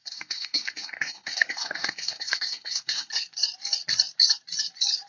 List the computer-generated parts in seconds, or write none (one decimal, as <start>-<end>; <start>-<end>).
0.0-3.1